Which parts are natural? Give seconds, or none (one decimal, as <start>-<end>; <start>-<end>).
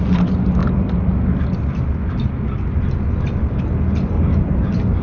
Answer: 0.0-5.0